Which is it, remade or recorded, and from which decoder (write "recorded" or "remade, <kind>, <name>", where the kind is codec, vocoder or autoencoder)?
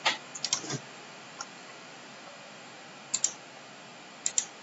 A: recorded